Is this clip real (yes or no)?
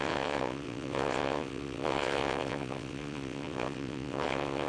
no